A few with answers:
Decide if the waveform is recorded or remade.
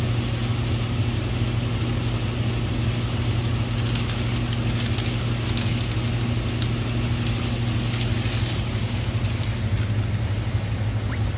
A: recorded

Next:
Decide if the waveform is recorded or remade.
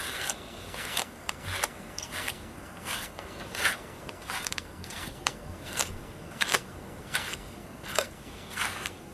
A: remade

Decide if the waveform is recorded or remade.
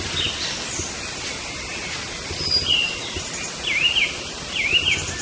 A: recorded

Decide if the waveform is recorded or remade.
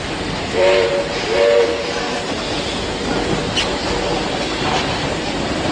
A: recorded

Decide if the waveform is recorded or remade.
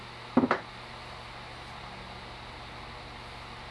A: recorded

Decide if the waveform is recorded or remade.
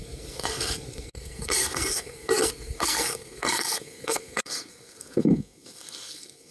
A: remade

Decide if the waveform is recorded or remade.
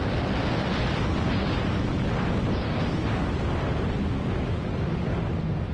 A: recorded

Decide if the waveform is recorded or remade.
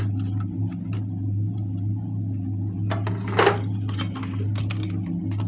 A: recorded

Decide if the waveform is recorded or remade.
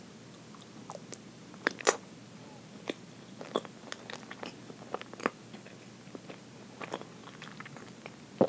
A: recorded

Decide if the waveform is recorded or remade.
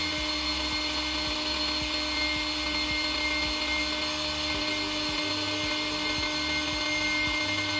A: recorded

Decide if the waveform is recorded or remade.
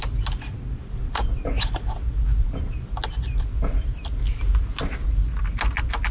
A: recorded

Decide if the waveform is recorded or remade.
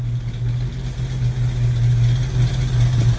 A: recorded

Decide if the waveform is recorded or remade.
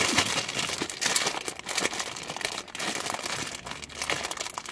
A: recorded